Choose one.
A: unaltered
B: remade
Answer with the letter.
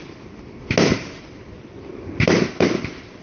A